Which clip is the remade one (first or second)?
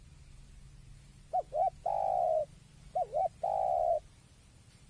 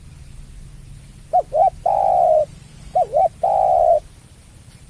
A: second